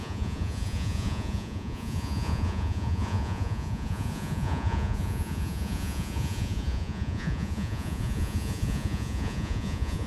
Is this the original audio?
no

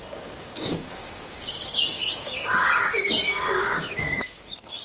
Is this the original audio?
no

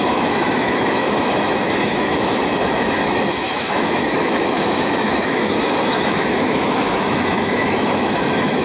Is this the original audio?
no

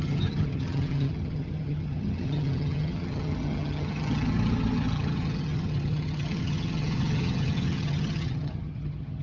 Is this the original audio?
no